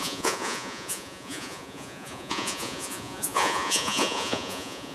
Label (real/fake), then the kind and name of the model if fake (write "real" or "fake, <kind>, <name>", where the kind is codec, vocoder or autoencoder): fake, vocoder, Vocos